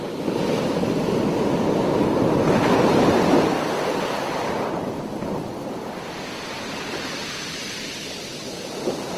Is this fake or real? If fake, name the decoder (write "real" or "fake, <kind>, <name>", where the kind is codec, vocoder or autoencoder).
real